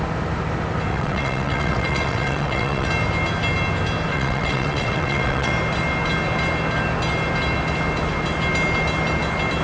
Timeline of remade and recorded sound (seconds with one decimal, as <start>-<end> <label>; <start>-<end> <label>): 0.0-0.9 recorded; 0.9-2.9 remade; 2.9-4.1 recorded; 4.1-5.5 remade; 5.5-9.6 recorded